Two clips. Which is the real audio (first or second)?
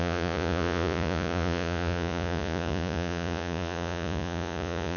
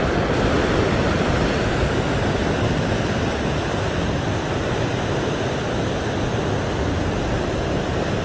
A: second